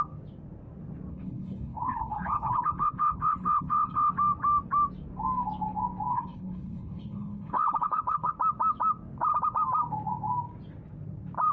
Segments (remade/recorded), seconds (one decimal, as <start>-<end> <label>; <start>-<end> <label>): 0.0-1.1 recorded; 1.1-4.1 remade; 4.1-6.1 recorded; 6.1-8.3 remade; 8.3-11.5 recorded